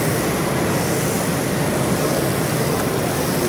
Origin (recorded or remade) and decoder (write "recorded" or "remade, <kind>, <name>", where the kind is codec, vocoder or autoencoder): recorded